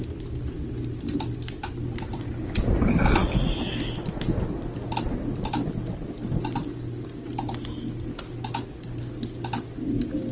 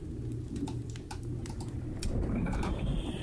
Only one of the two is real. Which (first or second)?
first